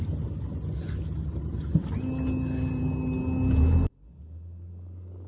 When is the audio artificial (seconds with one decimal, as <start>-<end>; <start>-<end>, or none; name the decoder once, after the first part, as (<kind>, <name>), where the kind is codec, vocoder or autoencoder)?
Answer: none